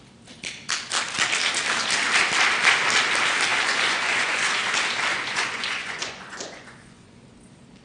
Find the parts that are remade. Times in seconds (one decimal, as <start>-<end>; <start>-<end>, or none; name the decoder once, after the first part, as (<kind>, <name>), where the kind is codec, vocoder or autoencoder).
3.5-4.5 (vocoder, Vocos); 5.1-7.2